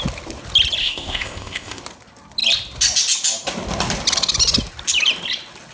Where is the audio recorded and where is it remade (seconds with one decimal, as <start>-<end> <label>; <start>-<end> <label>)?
0.0-0.8 recorded; 0.8-1.8 remade; 1.8-5.7 recorded